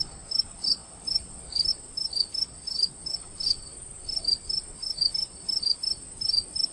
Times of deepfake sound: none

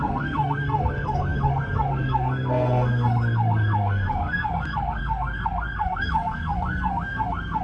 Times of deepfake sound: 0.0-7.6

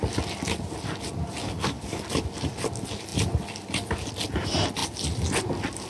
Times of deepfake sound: 1.4-2.0